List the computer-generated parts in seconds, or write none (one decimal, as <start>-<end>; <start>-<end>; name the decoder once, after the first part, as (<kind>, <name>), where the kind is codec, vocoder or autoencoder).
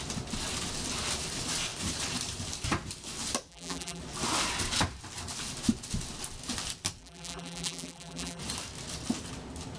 3.5-4.0 (vocoder, BigVGAN v2); 7.0-8.4